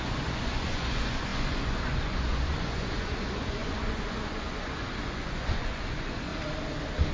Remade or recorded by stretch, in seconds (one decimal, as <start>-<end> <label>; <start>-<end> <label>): 0.0-6.3 remade; 6.3-7.1 recorded